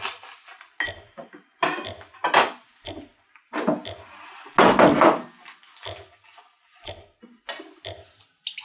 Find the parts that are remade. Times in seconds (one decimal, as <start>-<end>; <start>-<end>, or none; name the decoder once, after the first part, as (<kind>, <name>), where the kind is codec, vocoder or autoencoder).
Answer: none